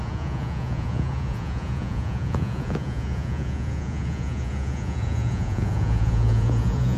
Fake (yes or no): yes